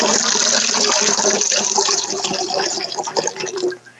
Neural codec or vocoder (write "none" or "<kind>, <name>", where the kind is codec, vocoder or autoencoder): none